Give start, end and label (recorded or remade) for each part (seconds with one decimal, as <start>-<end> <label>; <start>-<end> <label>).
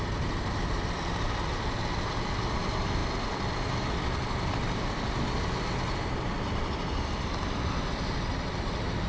0.0-9.1 recorded